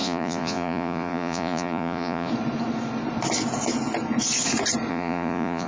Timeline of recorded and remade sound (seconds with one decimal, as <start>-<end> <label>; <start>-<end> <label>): 0.0-2.3 remade; 2.3-4.9 recorded; 4.9-5.7 remade